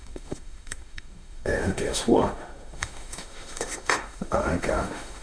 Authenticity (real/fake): fake